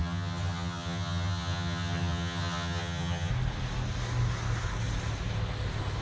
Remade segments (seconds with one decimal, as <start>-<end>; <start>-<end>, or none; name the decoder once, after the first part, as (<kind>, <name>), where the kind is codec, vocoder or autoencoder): 0.0-3.3 (vocoder, HiFi-GAN)